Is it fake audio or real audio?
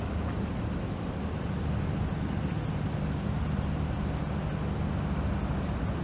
real